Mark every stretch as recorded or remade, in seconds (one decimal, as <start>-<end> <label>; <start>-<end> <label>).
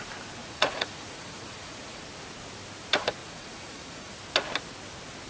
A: 0.0-0.4 recorded; 0.4-2.0 remade; 2.0-3.2 recorded; 3.2-4.1 remade; 4.1-5.3 recorded